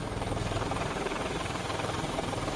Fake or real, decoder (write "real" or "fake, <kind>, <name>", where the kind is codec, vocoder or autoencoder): fake, vocoder, BigVGAN v2